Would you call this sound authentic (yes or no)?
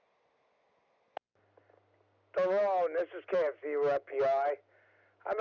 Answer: yes